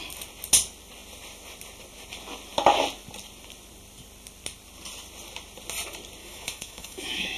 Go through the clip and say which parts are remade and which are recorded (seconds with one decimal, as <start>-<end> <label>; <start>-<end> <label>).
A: 0.0-6.2 recorded; 6.2-7.4 remade